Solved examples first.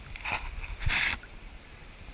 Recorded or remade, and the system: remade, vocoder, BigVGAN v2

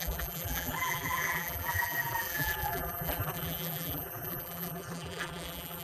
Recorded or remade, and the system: remade, vocoder, BigVGAN v2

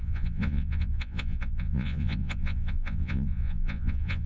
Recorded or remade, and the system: remade, vocoder, Vocos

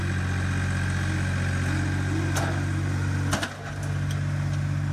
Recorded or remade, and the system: recorded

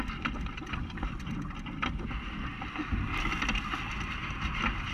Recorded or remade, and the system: recorded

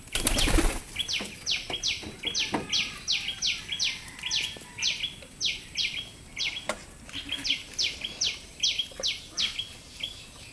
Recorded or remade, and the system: recorded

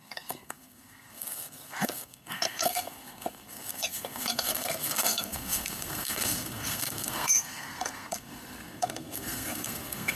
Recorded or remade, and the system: remade, codec, SNAC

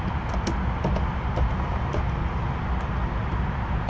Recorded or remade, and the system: recorded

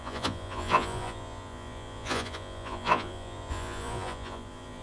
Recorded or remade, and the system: remade, vocoder, Vocos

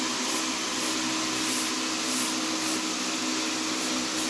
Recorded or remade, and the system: recorded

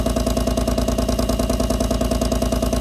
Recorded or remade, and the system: recorded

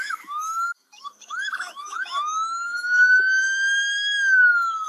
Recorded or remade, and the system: remade, autoencoder, DAC-VAE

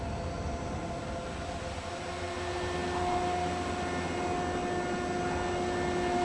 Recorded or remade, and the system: recorded